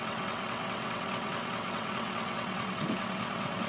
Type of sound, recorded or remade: remade